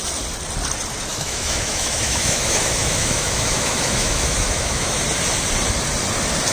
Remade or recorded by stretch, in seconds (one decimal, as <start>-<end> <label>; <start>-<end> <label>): 0.0-1.1 recorded; 1.1-5.0 remade; 5.0-6.5 recorded